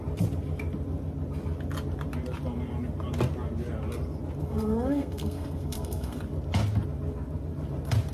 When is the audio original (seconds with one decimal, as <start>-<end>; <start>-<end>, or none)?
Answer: 0.0-4.4; 6.2-8.1